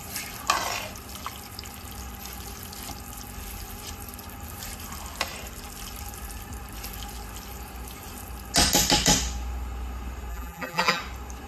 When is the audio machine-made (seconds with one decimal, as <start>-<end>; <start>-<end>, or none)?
10.3-11.0